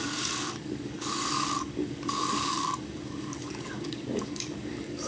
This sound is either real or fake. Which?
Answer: fake